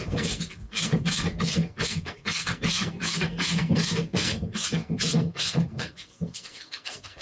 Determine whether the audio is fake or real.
fake